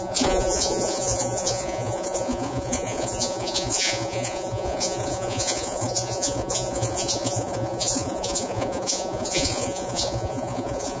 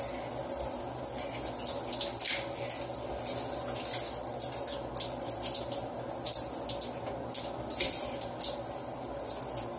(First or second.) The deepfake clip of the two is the first